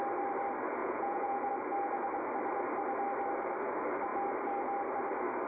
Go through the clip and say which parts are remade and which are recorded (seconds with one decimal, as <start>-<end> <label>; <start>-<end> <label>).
0.0-0.8 recorded; 0.8-1.5 remade; 1.5-5.5 recorded